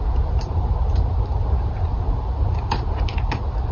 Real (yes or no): yes